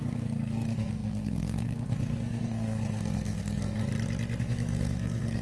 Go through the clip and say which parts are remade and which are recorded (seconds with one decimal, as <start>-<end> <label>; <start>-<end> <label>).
0.0-3.8 remade; 3.8-4.4 recorded; 4.4-5.4 remade